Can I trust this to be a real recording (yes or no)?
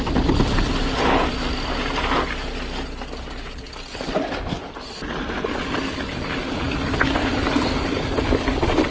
yes